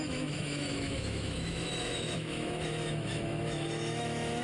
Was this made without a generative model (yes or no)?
no